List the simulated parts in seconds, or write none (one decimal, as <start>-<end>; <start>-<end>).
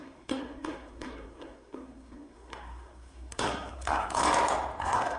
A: 0.0-4.2; 4.8-5.2